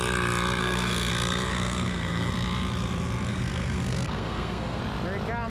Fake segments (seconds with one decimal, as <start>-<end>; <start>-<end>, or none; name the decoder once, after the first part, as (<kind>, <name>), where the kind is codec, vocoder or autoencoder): 0.6-1.1 (codec, SNAC); 1.5-2.3; 3.3-4.8